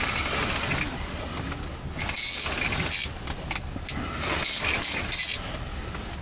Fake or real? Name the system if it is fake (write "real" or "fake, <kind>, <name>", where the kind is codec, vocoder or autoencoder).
real